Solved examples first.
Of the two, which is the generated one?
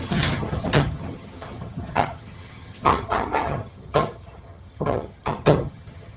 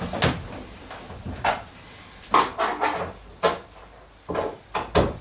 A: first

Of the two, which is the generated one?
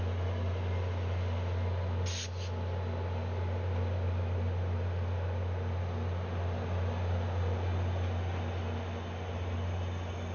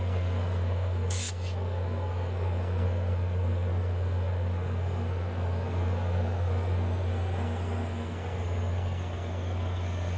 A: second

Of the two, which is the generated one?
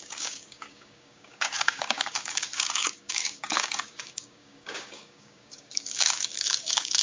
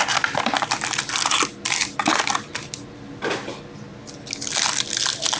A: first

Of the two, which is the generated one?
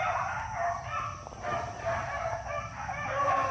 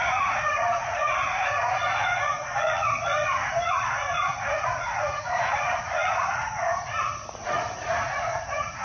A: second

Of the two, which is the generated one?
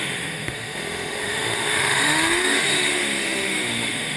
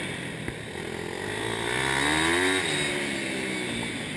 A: first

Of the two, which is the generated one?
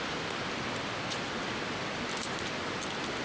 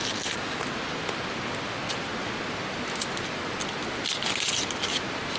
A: first